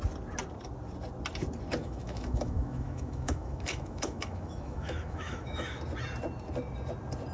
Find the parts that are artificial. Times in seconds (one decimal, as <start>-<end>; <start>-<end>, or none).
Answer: 1.8-5.8

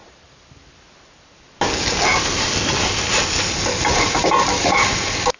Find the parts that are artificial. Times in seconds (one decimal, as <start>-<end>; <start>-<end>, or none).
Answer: none